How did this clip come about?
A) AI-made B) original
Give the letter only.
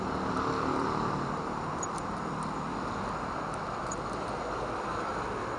A